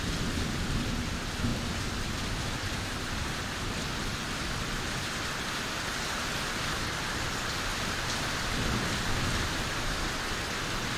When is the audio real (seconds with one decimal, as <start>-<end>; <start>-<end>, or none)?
0.0-1.5; 5.2-7.7; 8.4-11.0